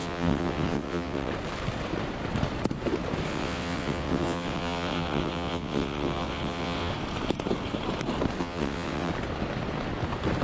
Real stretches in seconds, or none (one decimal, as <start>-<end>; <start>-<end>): 1.3-3.3; 6.9-8.4; 9.1-10.4